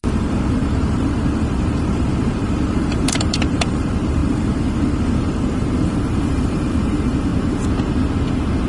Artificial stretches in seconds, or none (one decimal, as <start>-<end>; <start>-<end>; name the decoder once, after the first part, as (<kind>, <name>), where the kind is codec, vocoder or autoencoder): 0.0-7.3 (vocoder, BigVGAN v2)